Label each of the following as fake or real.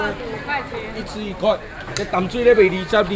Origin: real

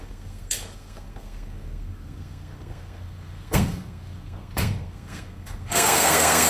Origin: fake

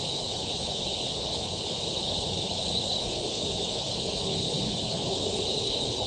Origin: fake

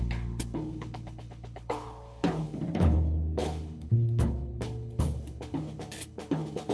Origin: fake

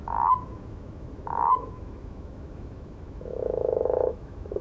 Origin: fake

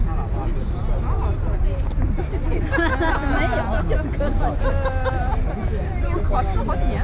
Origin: real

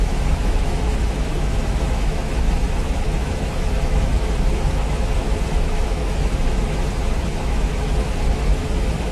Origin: fake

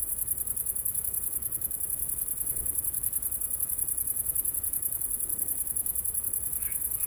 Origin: fake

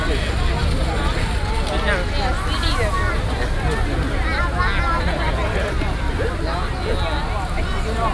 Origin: real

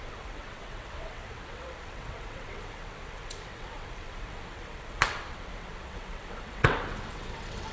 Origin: fake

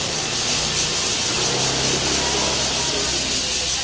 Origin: real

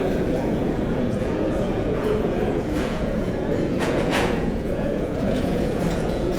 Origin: fake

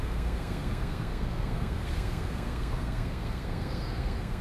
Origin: fake